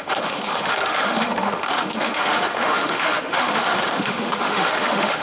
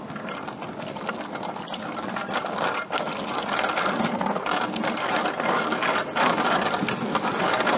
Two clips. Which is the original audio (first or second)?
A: second